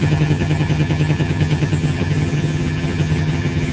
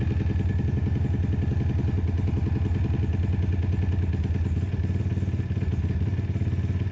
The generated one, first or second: first